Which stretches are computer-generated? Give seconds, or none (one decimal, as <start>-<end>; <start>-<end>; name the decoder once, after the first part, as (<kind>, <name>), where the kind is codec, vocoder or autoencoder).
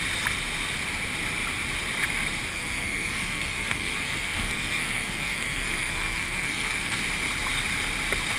2.5-7.0 (codec, SNAC)